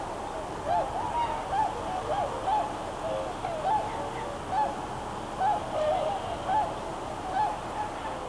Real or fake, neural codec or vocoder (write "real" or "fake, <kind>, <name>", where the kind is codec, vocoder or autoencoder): real